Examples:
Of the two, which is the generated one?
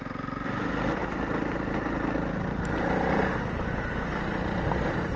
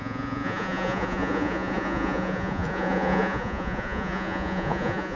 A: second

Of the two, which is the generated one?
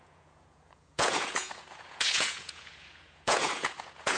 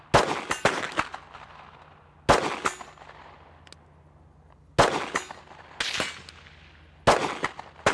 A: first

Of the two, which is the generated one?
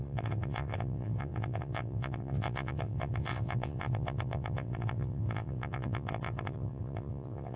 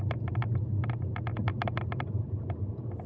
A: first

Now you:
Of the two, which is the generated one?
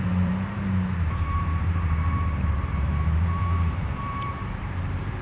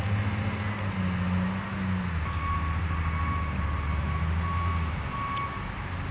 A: first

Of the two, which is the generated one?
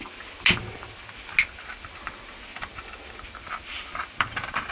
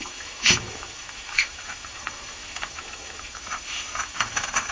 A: second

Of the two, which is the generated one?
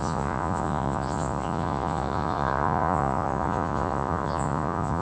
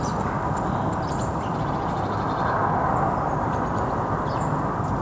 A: first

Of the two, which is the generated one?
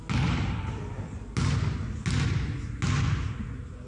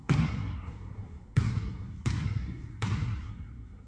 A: second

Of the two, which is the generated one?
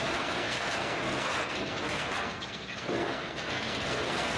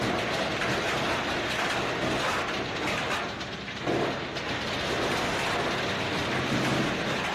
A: first